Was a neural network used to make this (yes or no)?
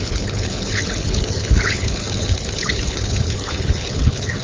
yes